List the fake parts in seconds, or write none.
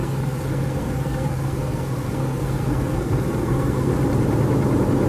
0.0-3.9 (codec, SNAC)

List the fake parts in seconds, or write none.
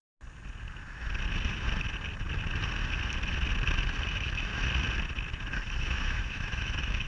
4.1-4.5 (autoencoder, DAC-VAE); 5.8-7.1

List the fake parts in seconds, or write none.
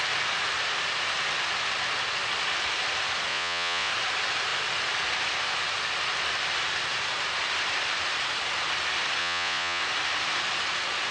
3.3-3.9 (vocoder, Vocos); 9.2-9.8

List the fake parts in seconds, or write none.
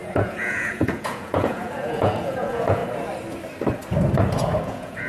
0.0-2.8 (vocoder, Vocos); 4.6-5.1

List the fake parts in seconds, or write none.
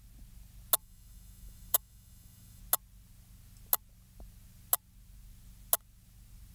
0.8-2.6 (autoencoder, DAC-VAE)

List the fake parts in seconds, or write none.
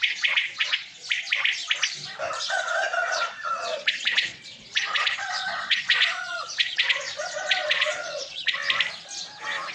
0.0-1.0 (vocoder, Vocos); 2.4-8.6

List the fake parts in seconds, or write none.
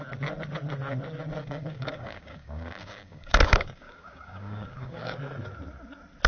1.4-5.2 (codec, DAC)